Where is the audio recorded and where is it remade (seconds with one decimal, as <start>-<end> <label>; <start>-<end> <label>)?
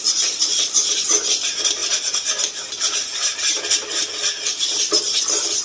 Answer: 0.0-5.6 recorded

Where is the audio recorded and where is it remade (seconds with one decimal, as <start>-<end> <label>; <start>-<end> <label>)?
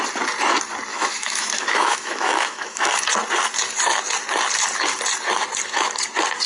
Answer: 0.0-0.9 recorded; 0.9-2.8 remade; 2.8-6.5 recorded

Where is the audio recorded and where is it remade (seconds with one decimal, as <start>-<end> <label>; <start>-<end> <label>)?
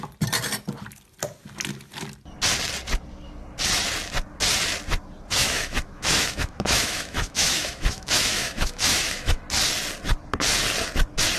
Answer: 0.0-5.4 recorded; 5.4-9.4 remade; 9.4-11.4 recorded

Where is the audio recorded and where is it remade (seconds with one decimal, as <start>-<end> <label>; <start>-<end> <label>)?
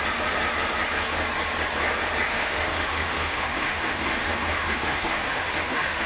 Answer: 0.0-2.3 recorded; 2.3-6.1 remade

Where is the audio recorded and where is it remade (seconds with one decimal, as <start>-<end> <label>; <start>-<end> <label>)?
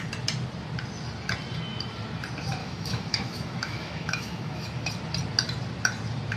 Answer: 0.0-2.6 recorded; 2.6-4.9 remade; 4.9-6.4 recorded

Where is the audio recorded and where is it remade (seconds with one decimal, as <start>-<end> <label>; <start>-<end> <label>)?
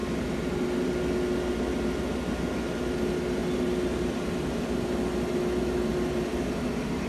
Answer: 0.0-7.1 recorded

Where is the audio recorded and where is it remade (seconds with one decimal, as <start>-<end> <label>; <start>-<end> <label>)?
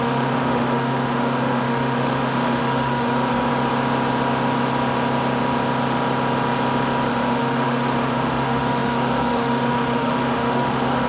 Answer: 0.0-3.5 remade; 3.5-7.1 recorded; 7.1-11.1 remade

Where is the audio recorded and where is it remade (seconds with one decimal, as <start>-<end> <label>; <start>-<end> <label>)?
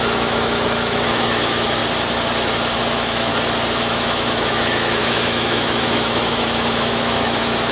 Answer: 0.0-1.8 remade; 1.8-2.8 recorded; 2.8-3.3 remade; 3.3-3.8 recorded; 3.8-7.7 remade